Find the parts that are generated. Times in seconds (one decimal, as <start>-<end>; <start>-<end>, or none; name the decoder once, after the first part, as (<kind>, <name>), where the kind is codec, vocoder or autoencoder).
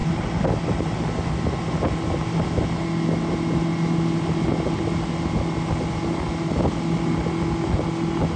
none